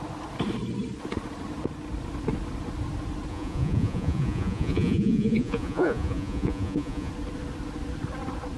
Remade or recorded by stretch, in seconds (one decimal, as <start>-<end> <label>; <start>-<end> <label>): 0.0-3.3 recorded; 3.3-7.1 remade; 7.1-8.6 recorded